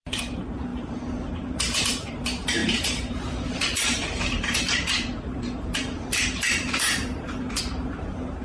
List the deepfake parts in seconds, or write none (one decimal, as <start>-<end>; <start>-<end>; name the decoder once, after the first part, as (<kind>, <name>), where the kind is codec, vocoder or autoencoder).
0.0-8.4 (vocoder, BigVGAN v2)